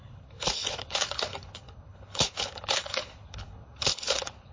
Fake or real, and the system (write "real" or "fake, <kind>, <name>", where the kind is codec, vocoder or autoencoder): fake, codec, HILCodec